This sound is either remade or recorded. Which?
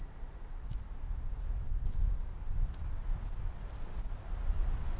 recorded